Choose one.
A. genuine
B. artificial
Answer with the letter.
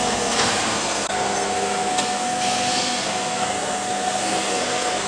B